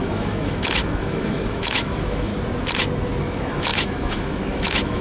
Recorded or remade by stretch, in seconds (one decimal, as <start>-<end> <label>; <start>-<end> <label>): 0.0-2.3 remade; 2.3-3.2 recorded; 3.2-5.0 remade

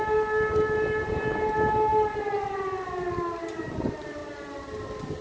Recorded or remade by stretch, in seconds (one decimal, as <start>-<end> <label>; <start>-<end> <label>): 0.0-1.9 remade; 1.9-3.6 recorded; 3.6-4.2 remade; 4.2-5.2 recorded

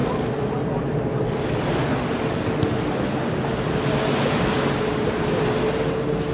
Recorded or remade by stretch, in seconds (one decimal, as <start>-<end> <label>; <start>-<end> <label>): 0.0-3.8 remade; 3.8-6.3 recorded